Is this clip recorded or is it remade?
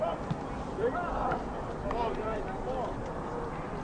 recorded